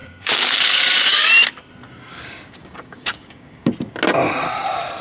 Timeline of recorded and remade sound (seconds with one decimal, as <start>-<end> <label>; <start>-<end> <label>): 0.0-1.3 remade; 1.3-2.1 recorded; 2.1-3.7 remade; 3.7-5.0 recorded